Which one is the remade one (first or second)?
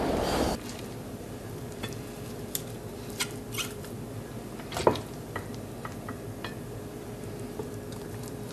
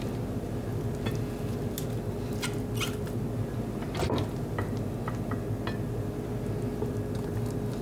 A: first